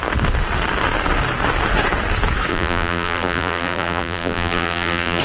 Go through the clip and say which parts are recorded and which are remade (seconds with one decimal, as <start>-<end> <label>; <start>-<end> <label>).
0.0-2.5 recorded; 2.5-5.2 remade